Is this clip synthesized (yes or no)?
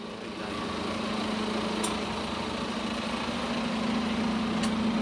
no